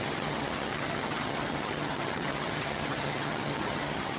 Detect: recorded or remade remade